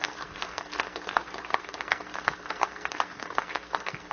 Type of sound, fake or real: fake